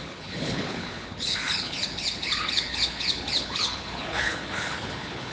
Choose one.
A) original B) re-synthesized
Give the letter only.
B